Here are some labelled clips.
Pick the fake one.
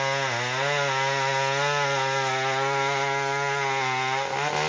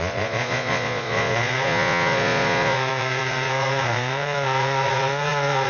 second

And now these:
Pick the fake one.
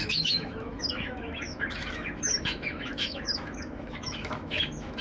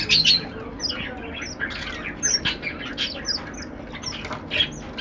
first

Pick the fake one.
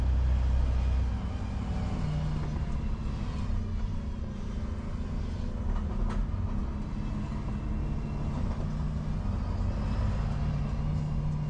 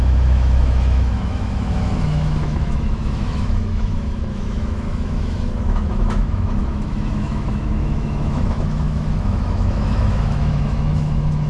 second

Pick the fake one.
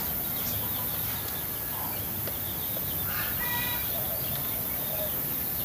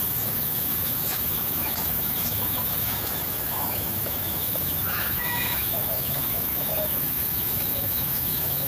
second